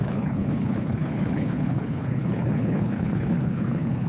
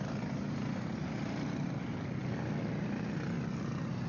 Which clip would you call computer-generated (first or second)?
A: first